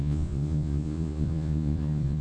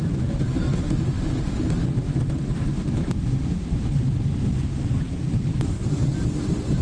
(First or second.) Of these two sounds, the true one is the second